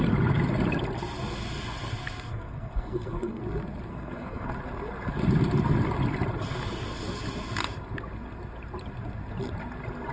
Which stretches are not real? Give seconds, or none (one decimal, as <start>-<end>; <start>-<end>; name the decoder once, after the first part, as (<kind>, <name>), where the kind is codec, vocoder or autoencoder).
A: 2.3-3.4 (codec, SNAC); 3.9-4.5